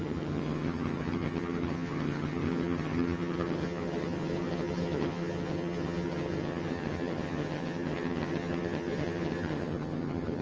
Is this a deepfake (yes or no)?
yes